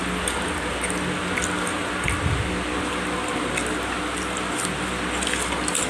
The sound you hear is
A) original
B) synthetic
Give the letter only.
A